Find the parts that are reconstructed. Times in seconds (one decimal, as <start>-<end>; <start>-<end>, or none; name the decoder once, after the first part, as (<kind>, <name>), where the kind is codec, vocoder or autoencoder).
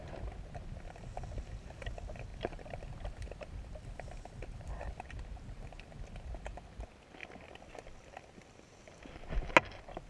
2.3-4.9 (vocoder, BigVGAN v2)